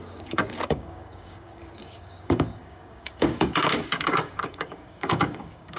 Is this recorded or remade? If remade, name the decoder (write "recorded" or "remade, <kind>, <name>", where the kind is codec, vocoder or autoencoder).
remade, codec, DAC